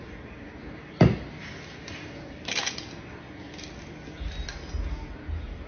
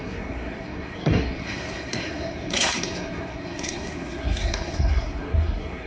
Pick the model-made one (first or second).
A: second